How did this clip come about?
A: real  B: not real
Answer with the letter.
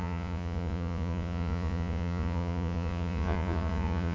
B